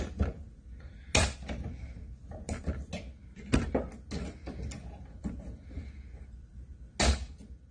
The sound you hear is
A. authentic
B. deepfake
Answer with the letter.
A